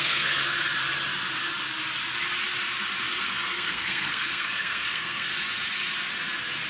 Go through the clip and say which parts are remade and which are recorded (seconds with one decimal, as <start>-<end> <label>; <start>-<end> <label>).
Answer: 0.0-0.4 remade; 0.4-3.2 recorded; 3.2-5.3 remade; 5.3-6.7 recorded